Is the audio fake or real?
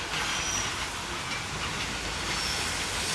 real